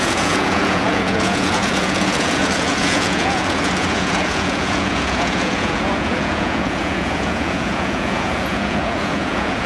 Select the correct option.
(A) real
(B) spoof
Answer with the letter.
B